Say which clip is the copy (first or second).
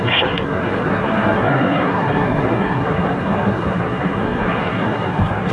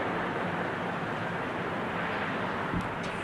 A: first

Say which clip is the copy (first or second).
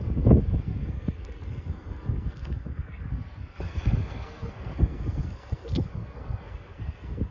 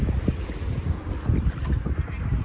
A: first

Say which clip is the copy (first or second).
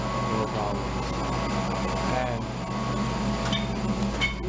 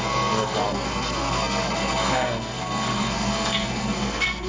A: second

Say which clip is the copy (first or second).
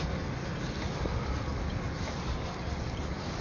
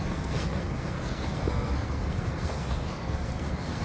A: second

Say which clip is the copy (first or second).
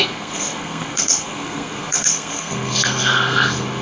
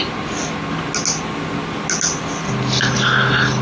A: first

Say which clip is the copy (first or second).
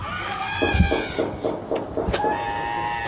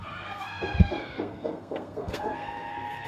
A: second